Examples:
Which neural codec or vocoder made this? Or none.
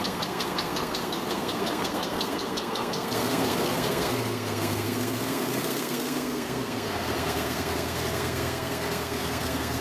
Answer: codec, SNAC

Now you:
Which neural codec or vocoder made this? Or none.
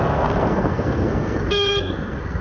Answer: codec, SNAC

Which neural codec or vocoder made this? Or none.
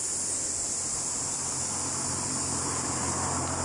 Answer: none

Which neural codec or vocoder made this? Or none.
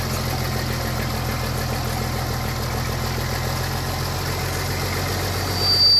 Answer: none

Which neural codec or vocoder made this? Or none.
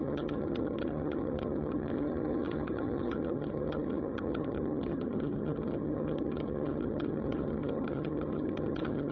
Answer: vocoder, HiFi-GAN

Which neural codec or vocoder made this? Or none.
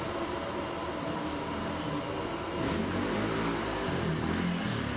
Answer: none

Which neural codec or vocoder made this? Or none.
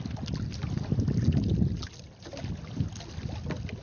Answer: none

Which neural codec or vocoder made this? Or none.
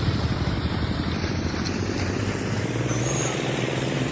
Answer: none